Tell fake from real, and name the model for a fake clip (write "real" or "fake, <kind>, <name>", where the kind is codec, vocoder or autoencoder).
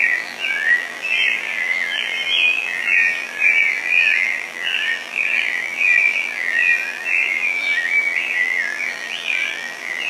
fake, vocoder, BigVGAN v2